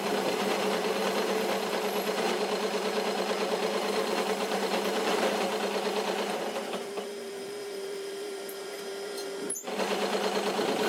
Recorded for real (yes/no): no